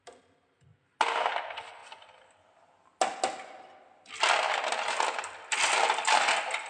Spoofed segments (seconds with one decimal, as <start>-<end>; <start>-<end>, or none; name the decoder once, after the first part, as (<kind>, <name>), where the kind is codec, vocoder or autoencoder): none